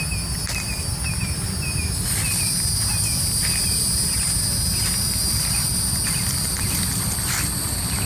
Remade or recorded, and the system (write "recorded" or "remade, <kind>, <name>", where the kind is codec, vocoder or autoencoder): recorded